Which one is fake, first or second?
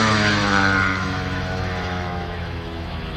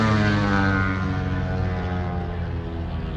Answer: first